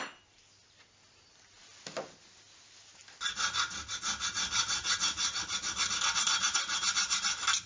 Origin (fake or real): real